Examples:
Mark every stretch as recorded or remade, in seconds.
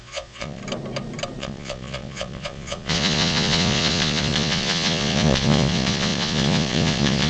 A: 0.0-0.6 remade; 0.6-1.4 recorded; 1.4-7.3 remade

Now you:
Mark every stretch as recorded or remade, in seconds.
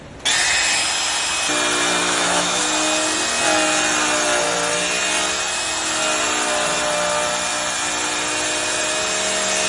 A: 0.0-2.0 recorded; 2.0-2.6 remade; 2.6-9.7 recorded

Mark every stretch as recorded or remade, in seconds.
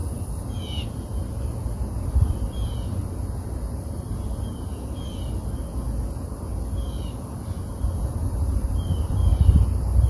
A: 0.0-0.5 remade; 0.5-9.3 recorded; 9.3-10.1 remade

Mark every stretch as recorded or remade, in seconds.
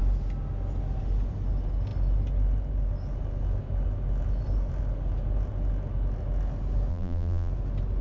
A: 0.0-6.9 recorded; 6.9-7.5 remade; 7.5-8.0 recorded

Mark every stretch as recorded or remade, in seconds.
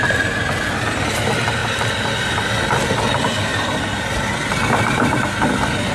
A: 0.0-5.9 recorded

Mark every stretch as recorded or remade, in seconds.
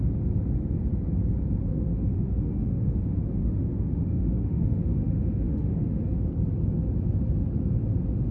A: 0.0-1.6 recorded; 1.6-6.0 remade; 6.0-8.3 recorded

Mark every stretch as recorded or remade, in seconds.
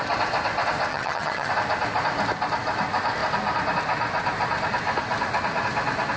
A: 0.0-0.9 recorded; 0.9-1.5 remade; 1.5-6.2 recorded